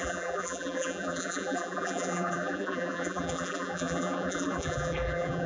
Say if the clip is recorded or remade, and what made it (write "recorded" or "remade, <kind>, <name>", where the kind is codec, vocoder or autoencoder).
remade, vocoder, BigVGAN v2